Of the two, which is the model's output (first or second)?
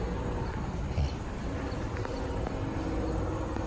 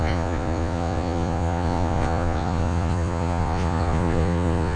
second